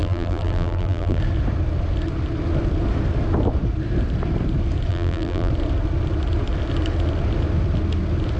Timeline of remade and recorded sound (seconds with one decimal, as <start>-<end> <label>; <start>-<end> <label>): 0.0-1.2 remade; 1.2-4.9 recorded; 4.9-5.5 remade; 5.5-8.4 recorded